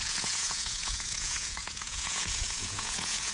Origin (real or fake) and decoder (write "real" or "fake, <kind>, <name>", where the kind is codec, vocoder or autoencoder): fake, vocoder, Vocos